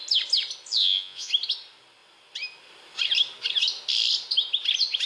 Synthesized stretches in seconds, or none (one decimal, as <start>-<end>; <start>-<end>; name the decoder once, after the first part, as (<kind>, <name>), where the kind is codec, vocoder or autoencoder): 0.8-1.3 (vocoder, Vocos)